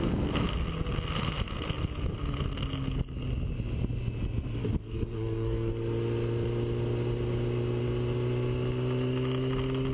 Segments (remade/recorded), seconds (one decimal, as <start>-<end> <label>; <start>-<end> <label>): 0.0-4.6 recorded; 4.6-5.7 remade; 5.7-9.9 recorded